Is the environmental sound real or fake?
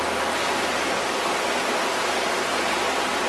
real